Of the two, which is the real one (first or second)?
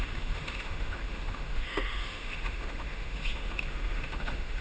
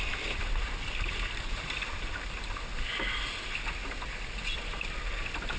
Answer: second